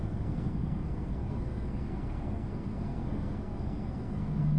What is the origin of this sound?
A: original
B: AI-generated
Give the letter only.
B